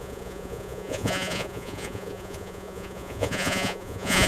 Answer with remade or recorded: remade